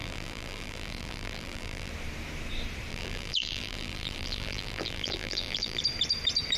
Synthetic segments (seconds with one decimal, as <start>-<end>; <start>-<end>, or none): 0.0-1.9; 2.9-5.8